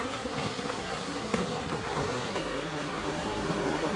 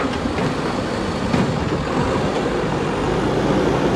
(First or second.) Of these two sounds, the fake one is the first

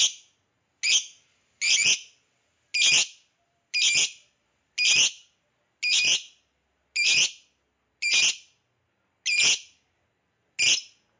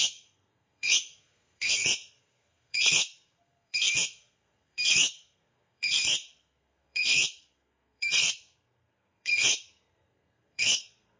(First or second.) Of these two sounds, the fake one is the second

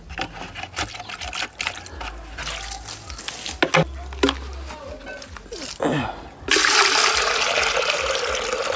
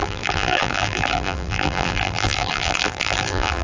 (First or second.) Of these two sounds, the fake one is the second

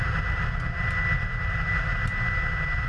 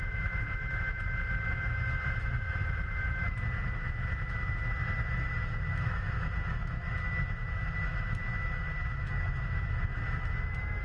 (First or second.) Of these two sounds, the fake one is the second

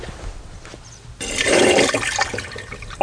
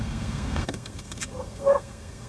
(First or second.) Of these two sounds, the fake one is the second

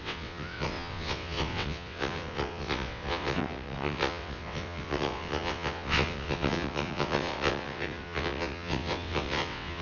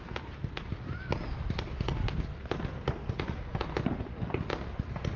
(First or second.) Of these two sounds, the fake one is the first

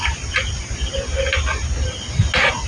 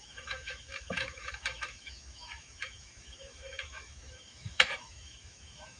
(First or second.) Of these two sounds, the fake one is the second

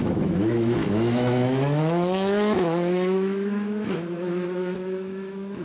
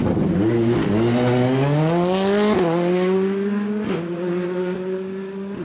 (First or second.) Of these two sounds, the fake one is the first